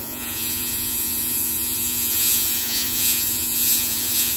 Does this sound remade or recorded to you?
remade